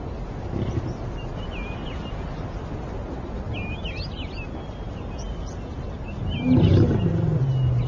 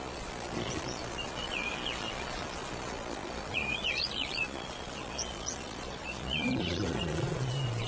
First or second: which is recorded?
first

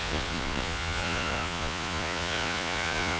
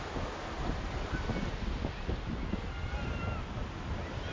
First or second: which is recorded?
second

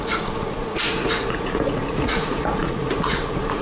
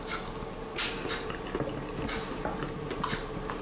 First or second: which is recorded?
second